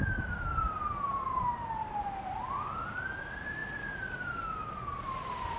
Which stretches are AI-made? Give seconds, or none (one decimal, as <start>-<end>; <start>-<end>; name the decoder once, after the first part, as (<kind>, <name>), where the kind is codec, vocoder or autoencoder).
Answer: none